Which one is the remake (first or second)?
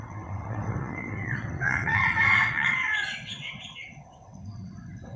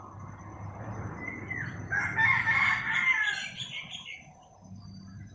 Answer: first